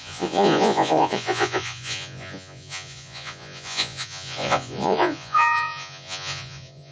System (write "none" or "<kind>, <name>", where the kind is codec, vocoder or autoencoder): vocoder, Vocos